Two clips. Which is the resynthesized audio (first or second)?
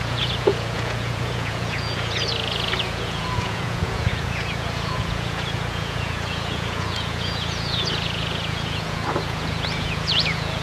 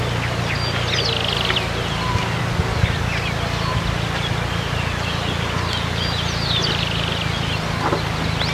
first